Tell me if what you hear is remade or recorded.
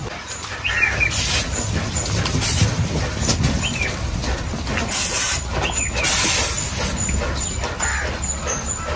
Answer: recorded